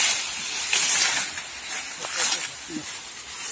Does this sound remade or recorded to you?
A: recorded